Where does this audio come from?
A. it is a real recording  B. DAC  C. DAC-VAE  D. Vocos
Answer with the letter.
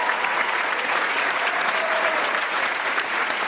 D